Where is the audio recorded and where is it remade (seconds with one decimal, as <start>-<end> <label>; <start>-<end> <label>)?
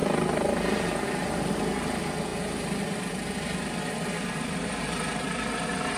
0.0-6.0 recorded